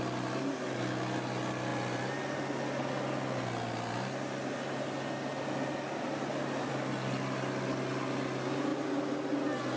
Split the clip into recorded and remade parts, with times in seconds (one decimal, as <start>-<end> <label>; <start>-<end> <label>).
0.0-9.8 recorded